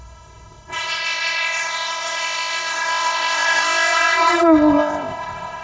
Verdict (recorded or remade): remade